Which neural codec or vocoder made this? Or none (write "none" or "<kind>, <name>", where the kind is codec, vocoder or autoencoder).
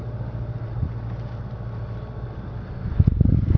none